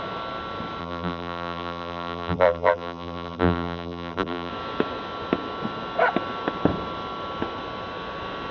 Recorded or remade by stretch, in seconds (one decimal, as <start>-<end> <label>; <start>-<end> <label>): 0.0-0.8 recorded; 0.8-4.5 remade; 4.5-8.5 recorded